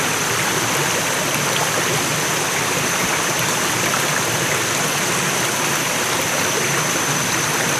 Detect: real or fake real